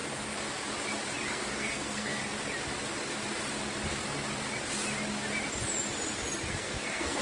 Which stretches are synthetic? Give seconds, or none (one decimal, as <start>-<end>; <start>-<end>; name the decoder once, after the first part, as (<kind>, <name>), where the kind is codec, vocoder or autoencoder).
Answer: 1.3-2.2 (codec, SNAC); 6.5-7.2